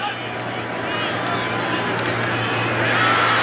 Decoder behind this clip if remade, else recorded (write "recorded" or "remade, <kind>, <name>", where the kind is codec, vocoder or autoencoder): recorded